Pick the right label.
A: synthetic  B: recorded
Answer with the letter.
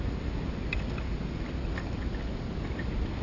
B